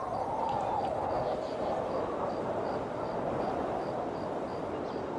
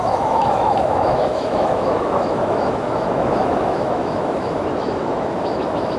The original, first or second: first